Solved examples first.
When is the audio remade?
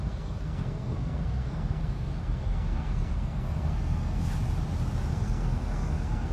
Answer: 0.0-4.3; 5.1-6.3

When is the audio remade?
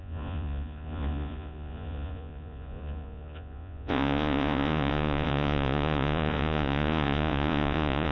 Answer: 0.0-8.1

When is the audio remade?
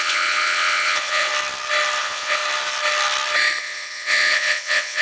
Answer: 0.0-1.3; 2.0-2.4; 3.6-5.0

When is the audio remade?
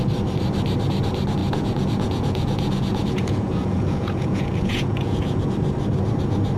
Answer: 1.4-5.4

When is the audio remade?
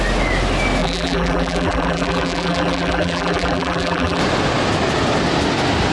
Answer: 0.8-4.2